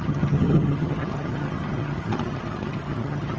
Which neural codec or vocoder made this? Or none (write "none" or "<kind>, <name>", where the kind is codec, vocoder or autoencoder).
vocoder, HiFi-GAN